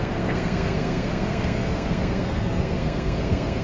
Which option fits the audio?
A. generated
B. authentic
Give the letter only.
A